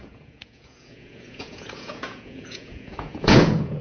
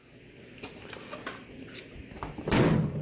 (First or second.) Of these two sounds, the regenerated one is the first